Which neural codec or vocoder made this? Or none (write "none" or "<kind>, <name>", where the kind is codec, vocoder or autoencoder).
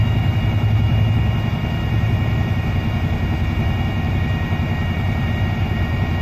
vocoder, BigVGAN v2